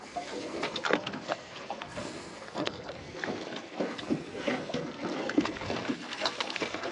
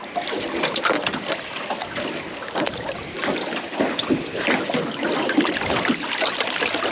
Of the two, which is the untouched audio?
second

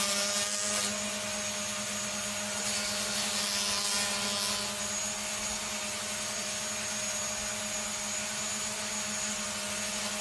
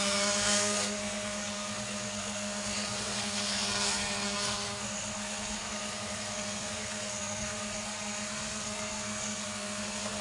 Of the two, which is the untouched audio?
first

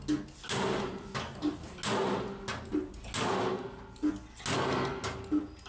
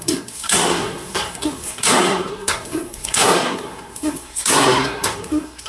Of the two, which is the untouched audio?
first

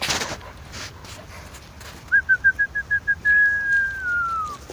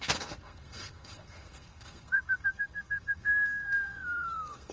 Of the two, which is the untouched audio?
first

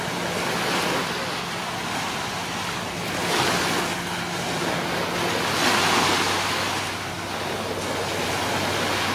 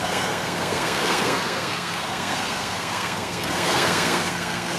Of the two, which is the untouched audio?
first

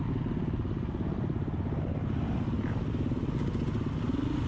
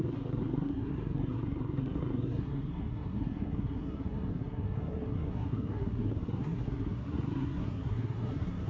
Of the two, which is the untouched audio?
first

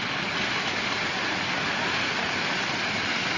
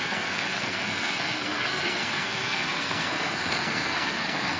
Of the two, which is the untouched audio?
first